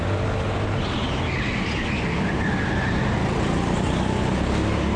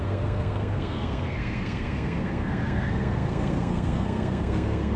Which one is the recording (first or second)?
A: first